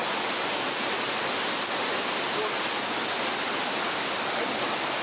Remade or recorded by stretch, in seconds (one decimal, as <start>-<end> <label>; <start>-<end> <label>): 0.0-5.0 recorded